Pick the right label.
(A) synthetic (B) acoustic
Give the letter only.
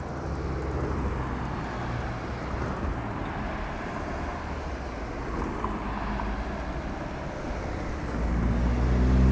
B